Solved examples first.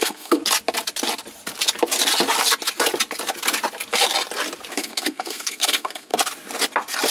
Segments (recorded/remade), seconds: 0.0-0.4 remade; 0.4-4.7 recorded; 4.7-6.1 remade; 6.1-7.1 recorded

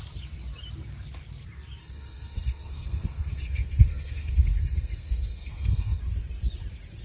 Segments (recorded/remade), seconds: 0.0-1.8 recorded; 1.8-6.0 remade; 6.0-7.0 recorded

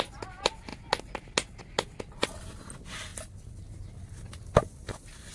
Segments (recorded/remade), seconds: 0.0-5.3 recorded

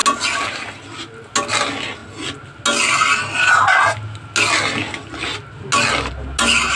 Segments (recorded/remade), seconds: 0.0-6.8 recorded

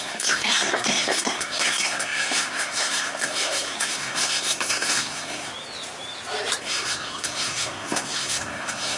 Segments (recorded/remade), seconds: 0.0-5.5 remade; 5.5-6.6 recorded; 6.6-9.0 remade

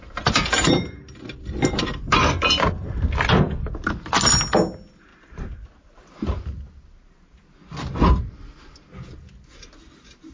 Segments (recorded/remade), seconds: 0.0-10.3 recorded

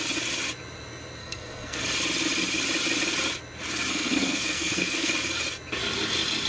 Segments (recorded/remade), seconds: 0.0-1.2 recorded; 1.2-1.8 remade; 1.8-3.9 recorded; 3.9-5.1 remade; 5.1-6.5 recorded

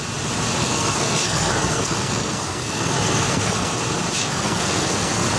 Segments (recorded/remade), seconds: 0.0-0.6 recorded; 0.6-3.8 remade; 3.8-4.2 recorded; 4.2-5.4 remade